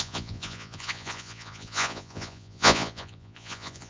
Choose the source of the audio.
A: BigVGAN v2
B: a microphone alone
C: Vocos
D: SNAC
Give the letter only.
C